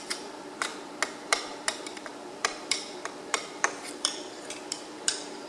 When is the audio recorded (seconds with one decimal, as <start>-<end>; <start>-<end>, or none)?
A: 0.7-1.3